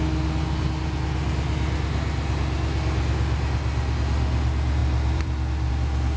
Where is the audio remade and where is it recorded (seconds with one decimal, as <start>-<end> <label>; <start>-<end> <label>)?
0.0-4.8 recorded; 4.8-5.7 remade; 5.7-6.2 recorded